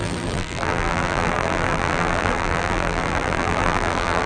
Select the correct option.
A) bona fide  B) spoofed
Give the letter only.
B